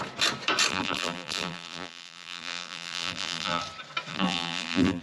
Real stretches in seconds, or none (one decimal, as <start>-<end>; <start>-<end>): 0.0-0.7; 3.6-4.1

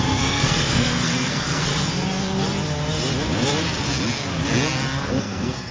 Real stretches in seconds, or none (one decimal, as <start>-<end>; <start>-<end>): 1.7-5.1

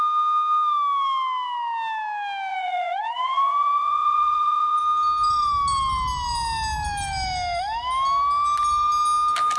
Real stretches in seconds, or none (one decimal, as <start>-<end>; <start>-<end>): 0.0-2.5; 4.8-9.6

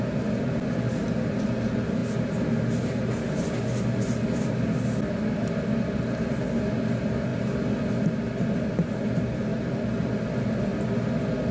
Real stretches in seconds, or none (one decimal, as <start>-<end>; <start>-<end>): 0.0-11.5

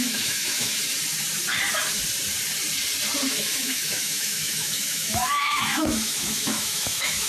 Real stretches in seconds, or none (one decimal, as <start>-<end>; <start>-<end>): 0.8-3.3